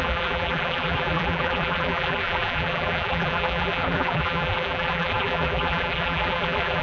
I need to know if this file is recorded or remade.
remade